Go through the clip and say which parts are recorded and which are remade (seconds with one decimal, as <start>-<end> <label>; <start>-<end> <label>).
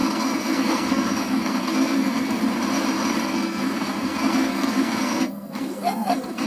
0.0-2.4 remade; 2.4-3.2 recorded; 3.2-6.5 remade